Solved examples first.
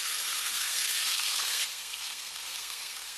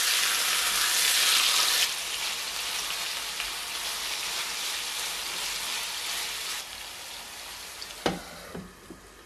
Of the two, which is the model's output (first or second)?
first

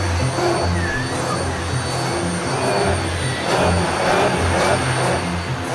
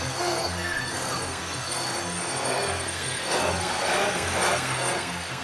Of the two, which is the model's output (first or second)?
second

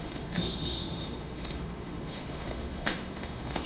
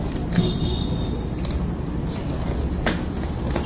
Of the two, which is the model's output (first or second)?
first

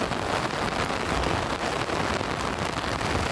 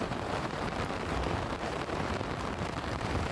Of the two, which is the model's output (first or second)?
second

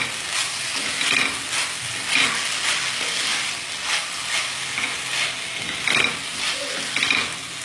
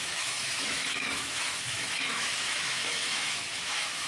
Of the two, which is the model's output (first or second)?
second